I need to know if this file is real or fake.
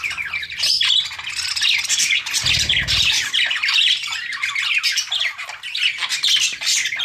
real